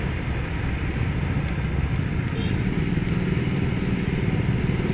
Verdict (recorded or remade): recorded